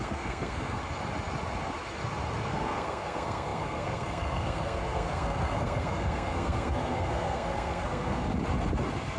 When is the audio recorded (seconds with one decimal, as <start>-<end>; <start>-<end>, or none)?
0.8-2.4; 8.3-9.2